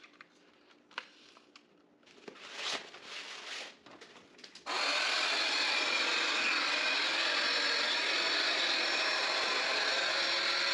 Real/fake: real